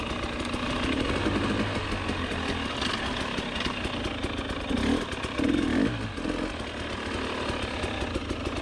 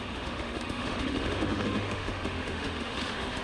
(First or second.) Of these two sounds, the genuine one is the first